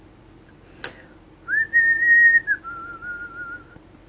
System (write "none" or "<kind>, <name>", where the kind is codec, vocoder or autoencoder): none